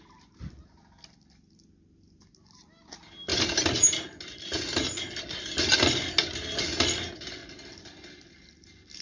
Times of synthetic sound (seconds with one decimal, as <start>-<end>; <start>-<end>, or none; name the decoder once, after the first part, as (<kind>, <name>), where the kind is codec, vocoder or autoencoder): none